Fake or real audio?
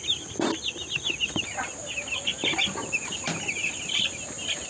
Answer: real